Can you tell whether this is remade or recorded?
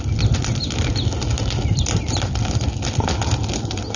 recorded